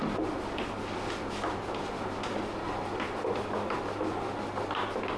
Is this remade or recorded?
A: recorded